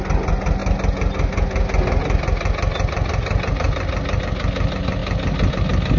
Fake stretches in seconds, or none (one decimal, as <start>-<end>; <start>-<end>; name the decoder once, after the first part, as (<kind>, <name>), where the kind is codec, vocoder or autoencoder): none